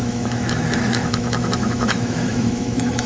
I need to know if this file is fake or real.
fake